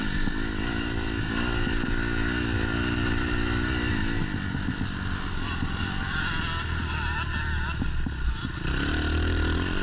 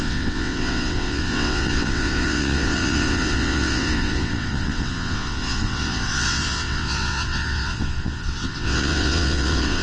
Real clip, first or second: first